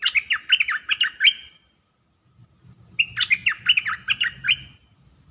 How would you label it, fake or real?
real